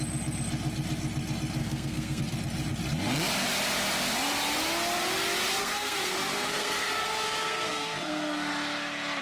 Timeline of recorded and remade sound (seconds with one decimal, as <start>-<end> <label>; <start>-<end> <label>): 0.0-1.6 recorded; 1.6-2.2 remade; 2.2-5.6 recorded; 5.6-8.5 remade; 8.5-9.2 recorded